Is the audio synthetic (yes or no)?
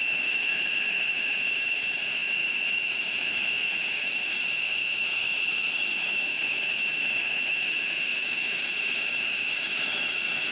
yes